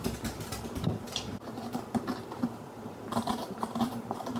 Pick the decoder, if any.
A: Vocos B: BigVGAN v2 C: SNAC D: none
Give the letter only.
B